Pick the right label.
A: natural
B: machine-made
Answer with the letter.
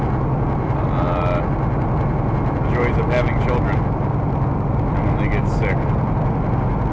A